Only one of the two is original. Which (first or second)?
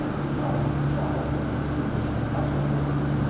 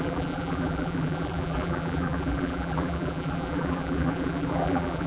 first